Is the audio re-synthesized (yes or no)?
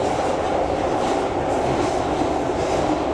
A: no